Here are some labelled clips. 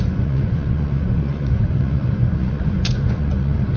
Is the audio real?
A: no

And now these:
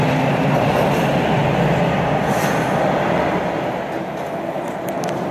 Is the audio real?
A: yes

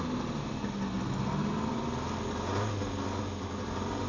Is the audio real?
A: yes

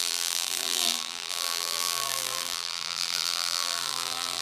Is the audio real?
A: no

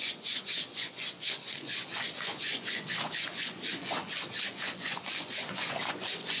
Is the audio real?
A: no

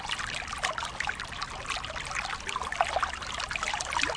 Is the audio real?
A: yes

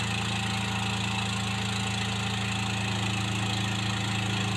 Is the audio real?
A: yes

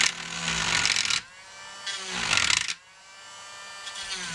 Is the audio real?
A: yes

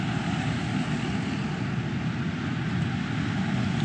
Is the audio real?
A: yes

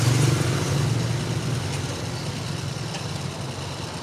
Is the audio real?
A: yes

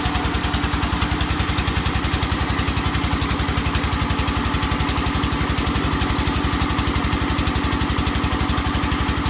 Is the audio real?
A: yes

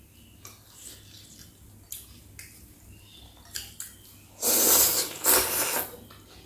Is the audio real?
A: yes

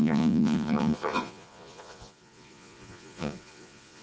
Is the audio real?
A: no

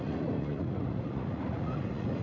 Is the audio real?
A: no